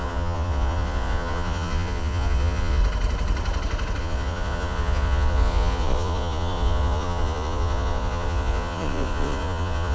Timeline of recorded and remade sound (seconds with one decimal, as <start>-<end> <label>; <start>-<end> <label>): 0.0-2.8 remade; 2.8-4.0 recorded; 4.0-9.9 remade